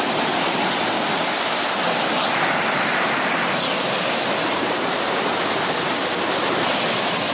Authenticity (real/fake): real